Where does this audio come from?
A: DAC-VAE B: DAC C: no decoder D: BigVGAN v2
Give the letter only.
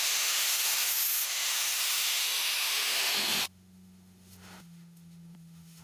A